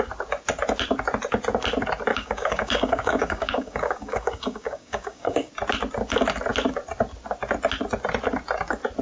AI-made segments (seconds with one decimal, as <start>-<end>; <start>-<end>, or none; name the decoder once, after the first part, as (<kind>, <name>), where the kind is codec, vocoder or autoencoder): 2.1-5.5 (codec, DAC)